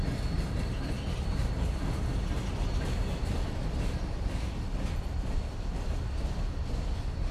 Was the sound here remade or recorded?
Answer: recorded